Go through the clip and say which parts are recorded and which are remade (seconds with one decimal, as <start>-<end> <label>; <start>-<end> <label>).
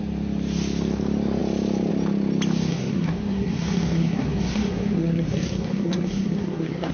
0.0-2.7 recorded; 2.7-6.9 remade